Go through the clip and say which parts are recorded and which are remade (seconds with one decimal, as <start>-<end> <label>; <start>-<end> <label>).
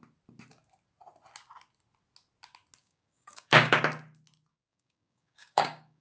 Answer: 0.0-2.8 recorded; 2.8-3.8 remade; 3.8-4.5 recorded; 4.5-6.0 remade